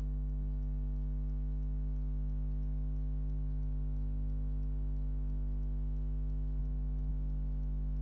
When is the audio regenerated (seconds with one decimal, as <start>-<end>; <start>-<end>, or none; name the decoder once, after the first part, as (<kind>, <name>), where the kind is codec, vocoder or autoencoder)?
none

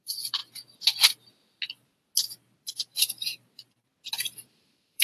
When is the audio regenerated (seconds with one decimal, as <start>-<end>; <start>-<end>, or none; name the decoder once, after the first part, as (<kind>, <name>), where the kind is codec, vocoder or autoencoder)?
0.0-0.4 (vocoder, BigVGAN v2); 2.6-3.9; 4.5-5.0

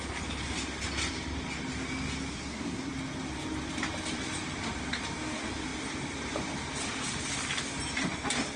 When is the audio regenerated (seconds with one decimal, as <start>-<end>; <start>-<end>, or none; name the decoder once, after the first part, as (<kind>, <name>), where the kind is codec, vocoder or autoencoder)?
2.3-2.9 (codec, SNAC)

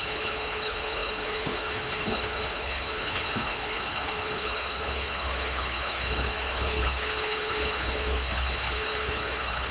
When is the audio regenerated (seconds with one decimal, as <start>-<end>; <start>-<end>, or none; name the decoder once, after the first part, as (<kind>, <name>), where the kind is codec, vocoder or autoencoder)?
0.0-9.7 (codec, HILCodec)

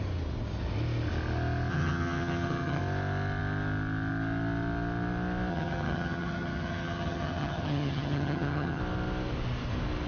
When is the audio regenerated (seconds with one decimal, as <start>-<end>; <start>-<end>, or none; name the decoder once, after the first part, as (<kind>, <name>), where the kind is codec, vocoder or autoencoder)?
1.7-2.8 (vocoder, HiFi-GAN); 5.5-8.8